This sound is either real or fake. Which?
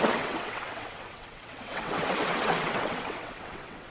fake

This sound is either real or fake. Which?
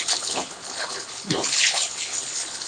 fake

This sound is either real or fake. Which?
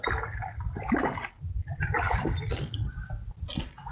real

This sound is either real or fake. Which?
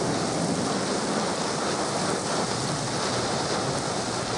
real